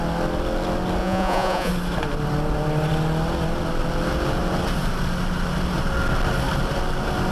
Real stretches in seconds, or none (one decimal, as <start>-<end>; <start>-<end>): 0.0-1.0; 1.7-7.3